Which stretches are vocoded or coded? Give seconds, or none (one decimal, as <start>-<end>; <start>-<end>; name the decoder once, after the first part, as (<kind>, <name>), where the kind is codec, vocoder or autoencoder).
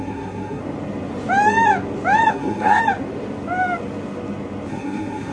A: 0.0-0.6 (codec, SNAC); 2.3-2.8; 4.7-5.3